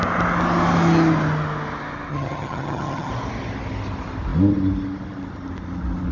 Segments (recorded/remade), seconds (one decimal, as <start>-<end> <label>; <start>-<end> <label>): 0.0-2.1 recorded; 2.1-3.1 remade; 3.1-6.1 recorded